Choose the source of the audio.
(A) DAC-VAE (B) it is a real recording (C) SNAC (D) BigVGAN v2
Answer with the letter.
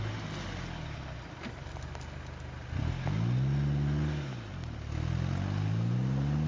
B